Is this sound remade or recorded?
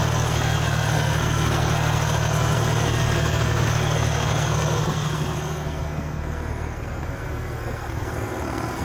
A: remade